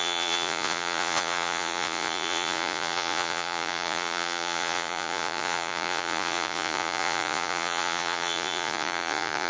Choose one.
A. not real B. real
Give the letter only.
A